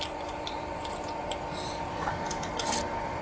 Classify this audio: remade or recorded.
recorded